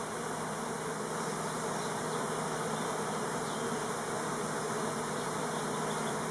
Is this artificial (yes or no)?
no